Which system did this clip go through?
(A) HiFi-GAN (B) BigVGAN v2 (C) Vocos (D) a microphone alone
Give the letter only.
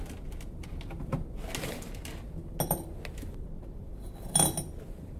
D